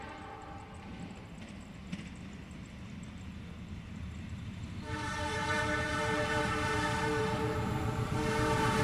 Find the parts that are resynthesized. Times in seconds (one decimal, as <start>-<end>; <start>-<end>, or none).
0.0-0.9; 3.9-8.8